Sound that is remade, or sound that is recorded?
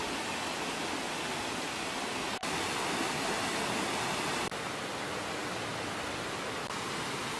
recorded